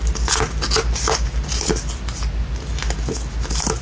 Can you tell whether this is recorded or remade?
recorded